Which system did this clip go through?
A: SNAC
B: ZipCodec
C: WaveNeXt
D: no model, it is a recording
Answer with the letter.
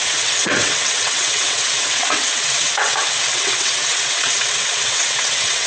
C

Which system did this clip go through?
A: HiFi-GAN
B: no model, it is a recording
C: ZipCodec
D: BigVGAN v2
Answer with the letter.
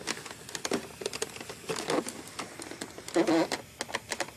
B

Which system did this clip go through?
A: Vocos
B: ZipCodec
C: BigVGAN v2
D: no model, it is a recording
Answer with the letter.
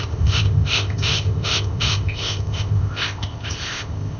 B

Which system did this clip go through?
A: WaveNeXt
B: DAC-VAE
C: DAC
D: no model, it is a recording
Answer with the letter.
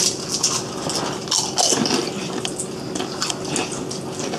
D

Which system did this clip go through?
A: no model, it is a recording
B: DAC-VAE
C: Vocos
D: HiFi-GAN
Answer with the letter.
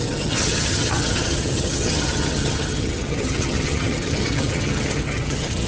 D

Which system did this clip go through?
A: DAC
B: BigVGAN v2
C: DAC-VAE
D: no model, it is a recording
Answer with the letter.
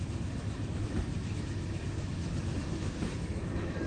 C